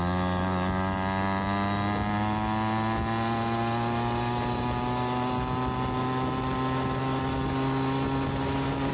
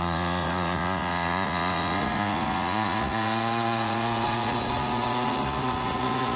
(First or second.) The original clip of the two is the first